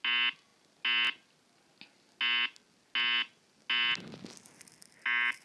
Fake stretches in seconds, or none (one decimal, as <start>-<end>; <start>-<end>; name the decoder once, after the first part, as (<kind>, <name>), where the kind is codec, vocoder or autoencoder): none